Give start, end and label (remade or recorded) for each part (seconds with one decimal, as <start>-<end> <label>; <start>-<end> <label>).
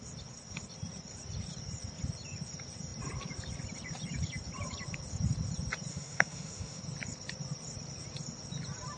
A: 0.0-5.9 recorded; 5.9-6.8 remade; 6.8-9.0 recorded